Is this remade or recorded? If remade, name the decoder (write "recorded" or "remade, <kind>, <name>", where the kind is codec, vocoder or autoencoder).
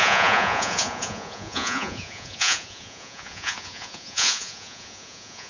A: remade, vocoder, Vocos